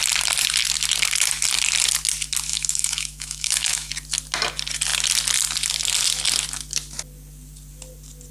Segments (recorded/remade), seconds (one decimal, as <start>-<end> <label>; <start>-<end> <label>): 0.0-2.5 recorded; 2.5-3.9 remade; 3.9-8.3 recorded